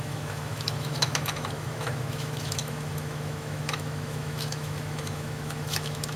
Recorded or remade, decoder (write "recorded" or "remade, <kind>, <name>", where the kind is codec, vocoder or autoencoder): remade, autoencoder, DAC-VAE